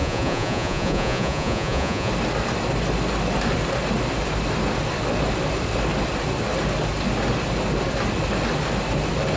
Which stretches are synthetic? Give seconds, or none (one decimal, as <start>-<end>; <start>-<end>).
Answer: 0.0-2.1